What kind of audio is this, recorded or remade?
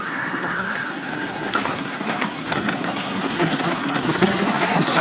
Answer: remade